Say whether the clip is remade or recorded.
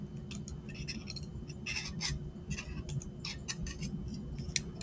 recorded